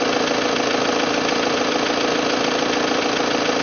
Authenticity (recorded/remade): recorded